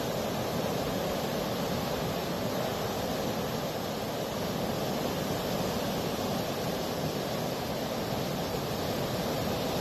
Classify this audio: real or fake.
real